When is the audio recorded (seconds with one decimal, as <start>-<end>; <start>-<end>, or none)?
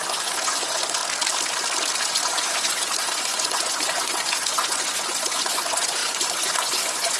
1.0-2.0